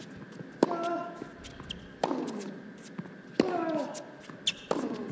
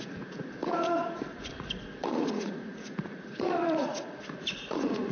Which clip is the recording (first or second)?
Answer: first